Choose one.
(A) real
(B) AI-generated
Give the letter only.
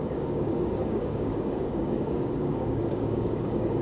B